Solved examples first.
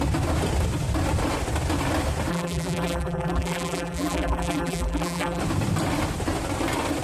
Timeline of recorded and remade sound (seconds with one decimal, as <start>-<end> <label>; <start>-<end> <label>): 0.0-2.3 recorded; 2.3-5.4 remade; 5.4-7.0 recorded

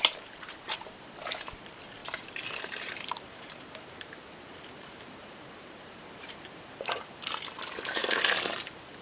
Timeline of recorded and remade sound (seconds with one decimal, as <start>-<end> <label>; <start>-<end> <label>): 0.0-8.0 remade; 8.0-8.6 recorded; 8.6-9.0 remade

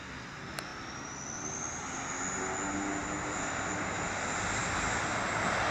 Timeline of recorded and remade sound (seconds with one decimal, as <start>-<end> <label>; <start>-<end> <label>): 0.0-5.7 recorded

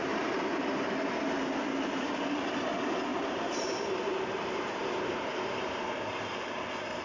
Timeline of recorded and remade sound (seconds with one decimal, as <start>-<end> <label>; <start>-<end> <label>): 0.0-3.1 recorded; 3.1-5.8 remade; 5.8-7.0 recorded

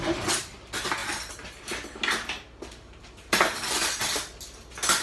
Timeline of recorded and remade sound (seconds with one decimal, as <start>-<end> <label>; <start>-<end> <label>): 0.0-5.0 recorded